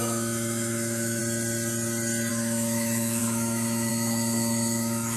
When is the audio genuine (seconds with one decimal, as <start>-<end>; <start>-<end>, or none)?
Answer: 1.2-2.3